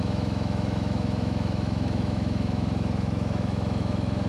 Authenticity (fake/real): fake